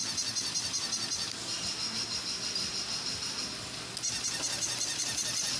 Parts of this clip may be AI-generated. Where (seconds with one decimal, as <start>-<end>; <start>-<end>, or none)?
none